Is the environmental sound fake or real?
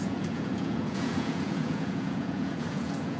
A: fake